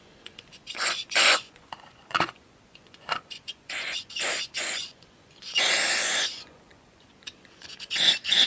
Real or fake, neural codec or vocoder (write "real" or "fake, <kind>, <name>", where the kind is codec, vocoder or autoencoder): fake, vocoder, Vocos